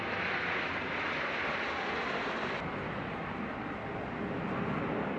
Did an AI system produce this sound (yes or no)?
no